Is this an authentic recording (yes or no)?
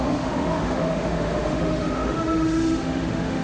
no